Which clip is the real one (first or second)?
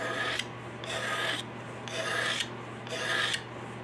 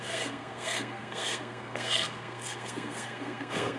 first